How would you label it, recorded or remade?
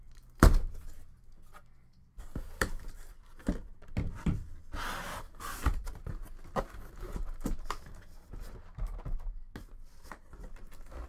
recorded